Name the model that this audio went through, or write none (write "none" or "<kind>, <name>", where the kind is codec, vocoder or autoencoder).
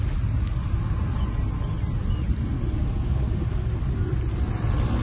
none